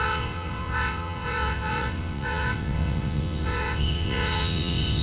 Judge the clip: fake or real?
fake